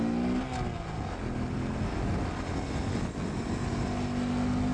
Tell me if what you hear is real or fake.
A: real